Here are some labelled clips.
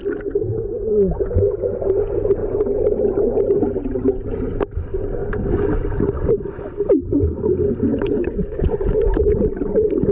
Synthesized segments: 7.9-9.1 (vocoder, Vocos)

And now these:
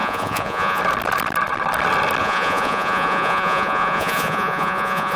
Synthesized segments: 0.0-0.8 (vocoder, Vocos); 2.2-5.2

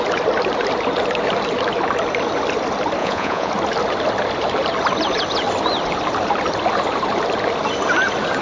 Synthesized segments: 3.0-3.5 (vocoder, Vocos)

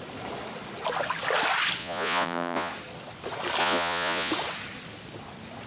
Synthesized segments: 1.8-2.7 (vocoder, Vocos); 3.6-4.3

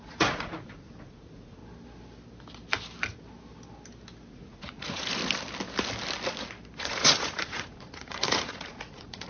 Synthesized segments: 0.0-1.6 (vocoder, Vocos); 4.3-5.2; 6.8-9.3

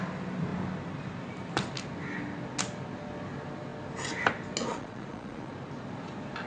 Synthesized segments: 4.7-5.5 (vocoder, Vocos)

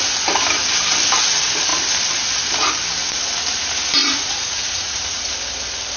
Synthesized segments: 4.0-5.3 (vocoder, Vocos)

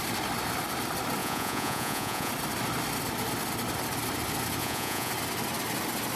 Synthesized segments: 1.2-2.3 (vocoder, Vocos); 4.6-5.1